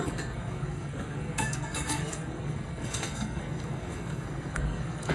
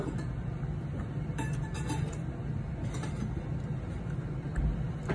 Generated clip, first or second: first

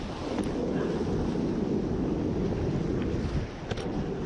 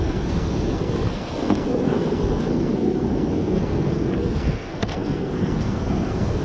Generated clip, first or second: second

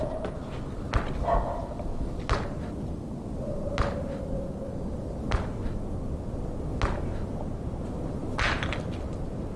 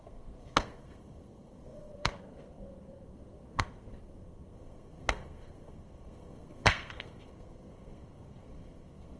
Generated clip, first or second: second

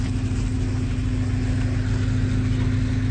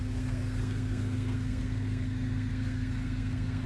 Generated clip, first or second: second